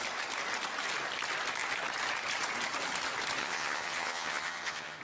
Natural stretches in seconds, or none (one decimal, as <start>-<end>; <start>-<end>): 0.0-3.4